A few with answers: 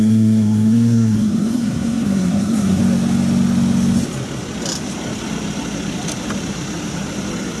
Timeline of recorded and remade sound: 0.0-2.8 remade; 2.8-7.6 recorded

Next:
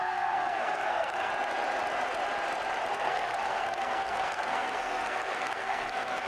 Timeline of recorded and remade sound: 0.0-1.3 remade; 1.3-2.9 recorded; 2.9-6.3 remade

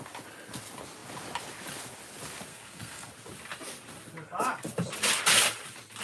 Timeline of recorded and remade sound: 0.0-2.5 recorded; 2.5-3.1 remade; 3.1-6.0 recorded